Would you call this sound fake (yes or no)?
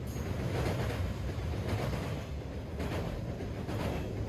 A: no